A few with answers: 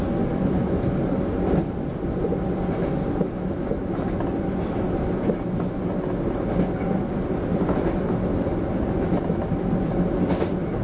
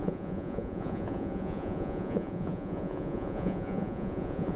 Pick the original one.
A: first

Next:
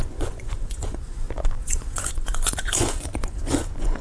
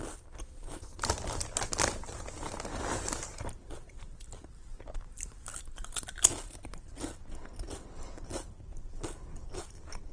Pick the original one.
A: second